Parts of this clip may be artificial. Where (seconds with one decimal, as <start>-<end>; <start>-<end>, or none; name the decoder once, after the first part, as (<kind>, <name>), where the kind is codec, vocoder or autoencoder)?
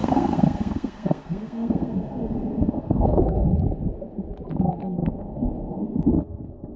0.0-3.5 (codec, SNAC); 4.6-6.8